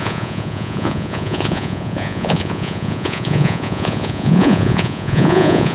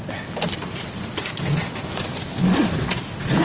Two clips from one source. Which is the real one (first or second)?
second